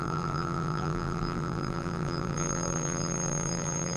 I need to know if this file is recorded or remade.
remade